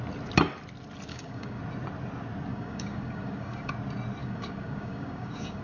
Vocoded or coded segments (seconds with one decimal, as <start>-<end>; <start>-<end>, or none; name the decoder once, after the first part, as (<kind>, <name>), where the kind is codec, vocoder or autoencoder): 1.1-1.6 (codec, DAC); 2.5-3.7; 4.2-5.6